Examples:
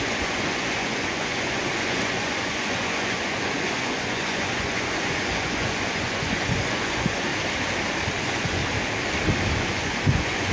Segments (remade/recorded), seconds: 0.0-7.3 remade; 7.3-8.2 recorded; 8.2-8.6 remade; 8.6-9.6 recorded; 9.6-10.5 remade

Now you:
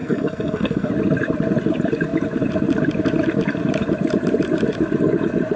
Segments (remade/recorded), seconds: 0.0-0.9 remade; 0.9-5.6 recorded

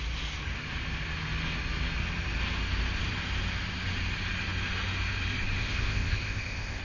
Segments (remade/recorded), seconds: 0.0-5.6 recorded; 5.6-6.8 remade

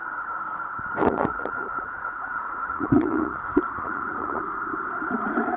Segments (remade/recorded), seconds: 0.0-1.0 recorded; 1.0-4.4 remade; 4.4-5.6 recorded